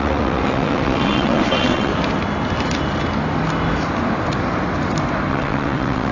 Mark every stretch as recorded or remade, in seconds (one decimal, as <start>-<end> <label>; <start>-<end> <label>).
0.0-1.9 remade; 1.9-5.3 recorded; 5.3-6.1 remade